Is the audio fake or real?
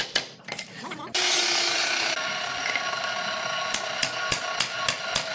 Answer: real